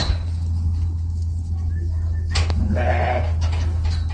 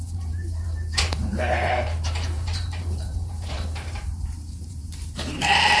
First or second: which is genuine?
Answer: first